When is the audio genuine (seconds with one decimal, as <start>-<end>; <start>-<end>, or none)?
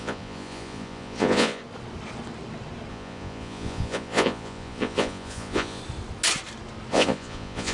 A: 1.6-2.9; 5.8-6.9